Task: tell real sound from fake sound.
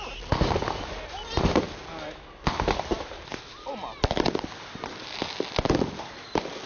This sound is real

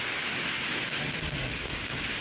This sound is real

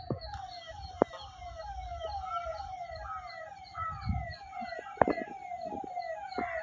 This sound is real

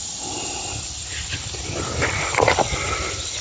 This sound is real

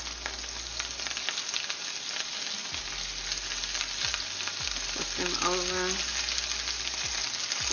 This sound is real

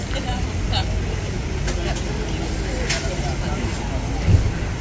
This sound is real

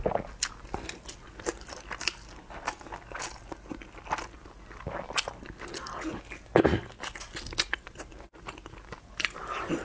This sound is real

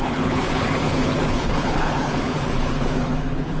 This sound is fake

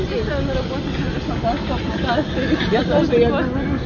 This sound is real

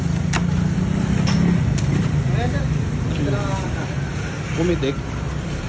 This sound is real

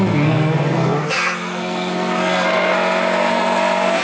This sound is fake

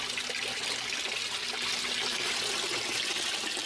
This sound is real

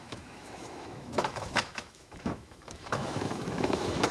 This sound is fake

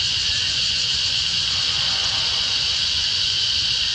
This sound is fake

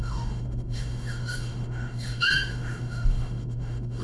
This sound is fake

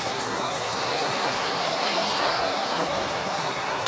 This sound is fake